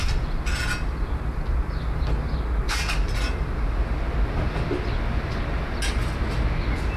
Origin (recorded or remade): recorded